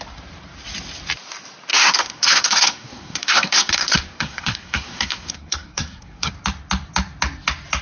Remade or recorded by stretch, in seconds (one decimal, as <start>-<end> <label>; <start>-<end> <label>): 0.0-1.7 recorded; 1.7-6.3 remade; 6.3-7.8 recorded